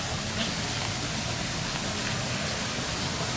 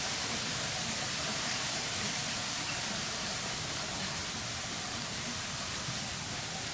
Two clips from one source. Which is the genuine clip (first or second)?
first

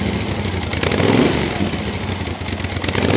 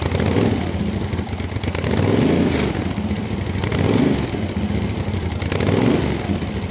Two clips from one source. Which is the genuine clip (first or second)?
first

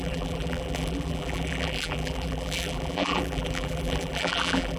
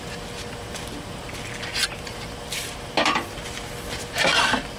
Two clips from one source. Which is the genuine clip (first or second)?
second